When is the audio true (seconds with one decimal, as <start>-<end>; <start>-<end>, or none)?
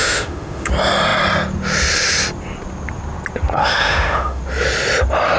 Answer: 0.7-3.6; 4.4-5.4